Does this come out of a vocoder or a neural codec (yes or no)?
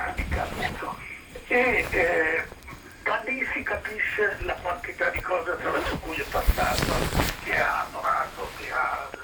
no